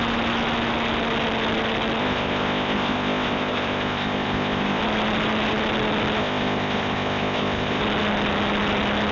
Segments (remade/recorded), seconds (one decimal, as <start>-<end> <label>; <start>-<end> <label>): 0.0-2.0 recorded; 2.0-4.8 remade; 4.8-6.2 recorded; 6.2-7.8 remade; 7.8-9.1 recorded